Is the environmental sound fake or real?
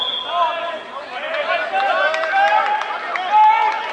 real